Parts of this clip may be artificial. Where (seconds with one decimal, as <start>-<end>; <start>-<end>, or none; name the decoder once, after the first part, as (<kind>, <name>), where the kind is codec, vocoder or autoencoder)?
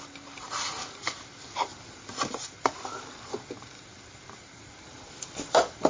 0.0-5.9 (vocoder, BigVGAN v2)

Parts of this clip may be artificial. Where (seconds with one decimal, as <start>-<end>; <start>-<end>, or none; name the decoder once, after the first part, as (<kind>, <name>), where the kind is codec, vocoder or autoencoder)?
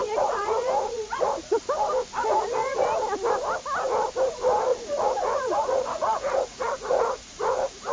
0.0-1.6 (vocoder, Vocos); 2.2-2.8; 4.7-7.9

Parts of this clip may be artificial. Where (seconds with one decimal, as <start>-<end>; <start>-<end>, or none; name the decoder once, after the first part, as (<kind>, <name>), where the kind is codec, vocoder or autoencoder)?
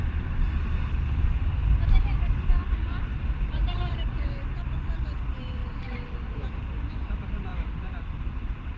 0.0-8.8 (vocoder, BigVGAN v2)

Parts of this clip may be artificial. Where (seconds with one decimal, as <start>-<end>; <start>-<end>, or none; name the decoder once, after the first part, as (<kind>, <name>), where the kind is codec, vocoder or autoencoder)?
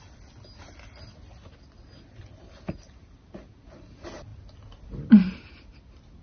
none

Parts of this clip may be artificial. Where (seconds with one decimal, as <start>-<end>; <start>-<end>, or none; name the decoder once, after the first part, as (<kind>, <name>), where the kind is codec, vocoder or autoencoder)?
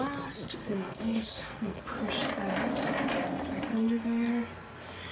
0.6-1.8 (codec, SNAC); 3.7-4.3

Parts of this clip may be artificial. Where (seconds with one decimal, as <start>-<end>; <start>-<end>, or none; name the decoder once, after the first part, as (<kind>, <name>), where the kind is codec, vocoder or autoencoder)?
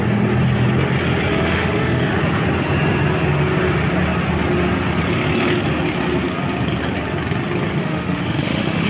1.3-2.2 (autoencoder, DAC-VAE); 7.8-8.9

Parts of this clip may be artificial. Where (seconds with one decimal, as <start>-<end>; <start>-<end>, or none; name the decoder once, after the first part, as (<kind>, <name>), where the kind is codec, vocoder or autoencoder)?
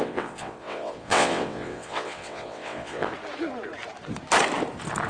0.0-3.1 (vocoder, WaveNeXt)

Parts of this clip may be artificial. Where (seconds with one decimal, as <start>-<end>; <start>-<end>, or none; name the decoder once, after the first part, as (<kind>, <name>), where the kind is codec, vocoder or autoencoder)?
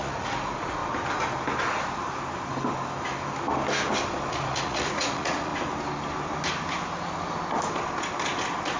0.0-0.8 (vocoder, Vocos); 4.3-5.5